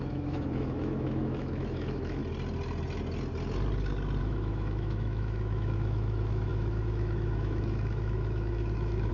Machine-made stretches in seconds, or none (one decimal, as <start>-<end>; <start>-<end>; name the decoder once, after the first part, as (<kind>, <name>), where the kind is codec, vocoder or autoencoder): 0.0-2.2 (autoencoder, DAC-VAE); 4.2-9.1